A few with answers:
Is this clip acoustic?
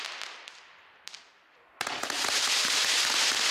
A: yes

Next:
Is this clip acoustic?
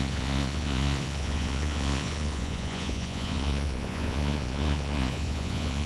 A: no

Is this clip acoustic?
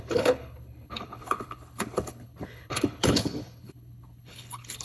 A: no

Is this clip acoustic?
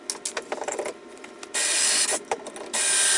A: yes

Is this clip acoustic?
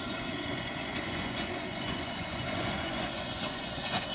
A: no